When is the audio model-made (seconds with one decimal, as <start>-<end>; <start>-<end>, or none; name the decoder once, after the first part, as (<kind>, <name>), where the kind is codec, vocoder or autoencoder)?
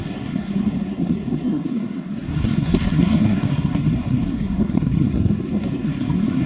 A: 0.0-6.5 (codec, SNAC)